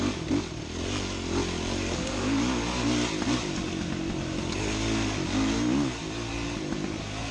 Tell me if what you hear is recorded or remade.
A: recorded